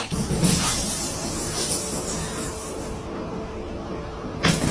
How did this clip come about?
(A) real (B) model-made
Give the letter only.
A